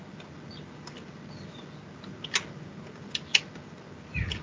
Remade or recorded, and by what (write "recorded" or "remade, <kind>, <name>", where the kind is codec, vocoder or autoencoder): recorded